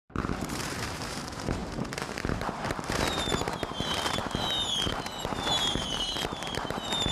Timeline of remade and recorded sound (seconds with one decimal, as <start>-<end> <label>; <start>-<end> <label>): 0.0-4.2 remade; 4.2-4.8 recorded; 4.8-7.1 remade